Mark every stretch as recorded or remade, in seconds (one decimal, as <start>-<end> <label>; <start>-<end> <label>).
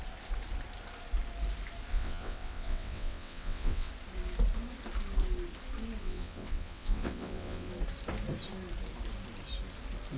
0.0-1.9 recorded; 1.9-3.9 remade; 3.9-6.0 recorded; 6.0-7.7 remade; 7.7-10.2 recorded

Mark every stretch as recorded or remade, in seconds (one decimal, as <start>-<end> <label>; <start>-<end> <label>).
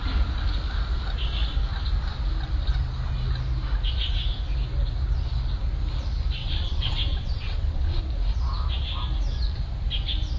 0.0-6.4 recorded; 6.4-8.0 remade; 8.0-10.4 recorded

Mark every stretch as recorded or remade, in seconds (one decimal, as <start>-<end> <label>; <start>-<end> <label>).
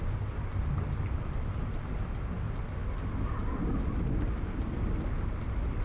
0.0-5.8 recorded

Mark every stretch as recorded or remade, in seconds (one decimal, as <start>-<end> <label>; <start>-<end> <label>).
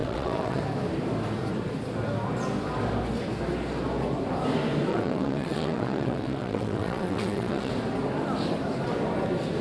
0.0-0.6 remade; 0.6-4.9 recorded; 4.9-7.7 remade; 7.7-9.6 recorded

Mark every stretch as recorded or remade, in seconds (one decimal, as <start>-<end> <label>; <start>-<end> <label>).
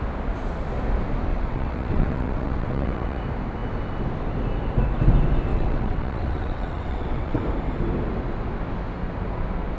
0.0-1.3 recorded; 1.3-3.2 remade; 3.2-5.5 recorded; 5.5-7.4 remade; 7.4-9.8 recorded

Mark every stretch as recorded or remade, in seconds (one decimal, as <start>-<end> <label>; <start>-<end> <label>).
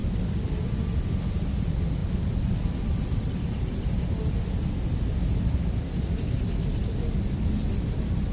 0.0-8.3 recorded